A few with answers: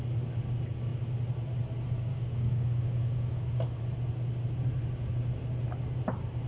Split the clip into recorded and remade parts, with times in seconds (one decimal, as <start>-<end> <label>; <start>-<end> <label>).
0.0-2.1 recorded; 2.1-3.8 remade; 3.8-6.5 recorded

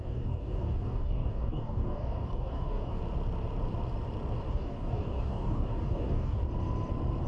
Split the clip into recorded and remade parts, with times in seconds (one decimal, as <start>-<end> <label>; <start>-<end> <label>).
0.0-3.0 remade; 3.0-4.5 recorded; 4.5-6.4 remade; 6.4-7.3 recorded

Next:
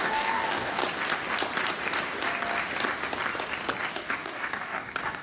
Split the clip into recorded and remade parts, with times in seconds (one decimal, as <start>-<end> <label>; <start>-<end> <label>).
0.0-0.8 remade; 0.8-3.9 recorded; 3.9-5.2 remade